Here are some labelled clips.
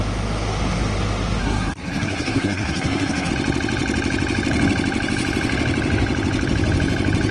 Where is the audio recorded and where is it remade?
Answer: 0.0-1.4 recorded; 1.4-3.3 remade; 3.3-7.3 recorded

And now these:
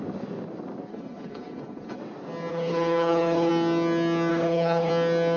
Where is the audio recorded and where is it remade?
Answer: 0.0-0.9 recorded; 0.9-2.0 remade; 2.0-2.5 recorded; 2.5-3.5 remade; 3.5-4.3 recorded; 4.3-4.9 remade; 4.9-5.4 recorded

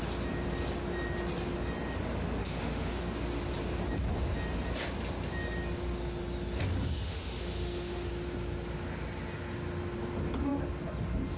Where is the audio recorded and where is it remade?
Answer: 0.0-2.4 recorded; 2.4-3.0 remade; 3.0-7.0 recorded; 7.0-8.1 remade; 8.1-11.4 recorded

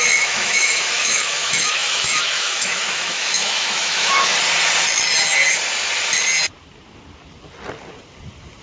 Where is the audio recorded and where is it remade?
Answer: 0.0-4.3 remade; 4.3-8.6 recorded

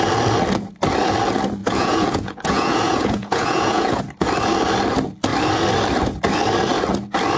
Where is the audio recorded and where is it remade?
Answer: 0.0-1.6 recorded; 1.6-4.0 remade; 4.0-7.4 recorded

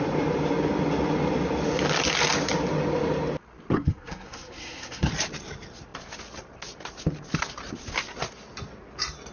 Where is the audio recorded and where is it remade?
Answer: 0.0-3.7 recorded; 3.7-5.1 remade; 5.1-9.3 recorded

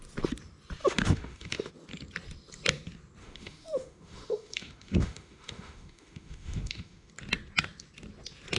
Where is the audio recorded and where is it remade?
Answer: 0.0-0.8 recorded; 0.8-1.7 remade; 1.7-3.2 recorded; 3.2-7.1 remade; 7.1-8.6 recorded